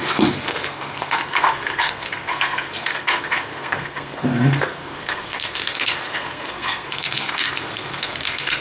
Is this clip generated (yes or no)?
yes